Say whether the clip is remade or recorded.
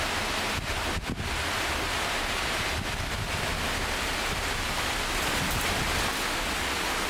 recorded